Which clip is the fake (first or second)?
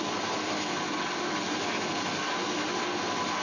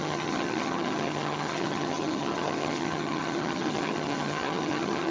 second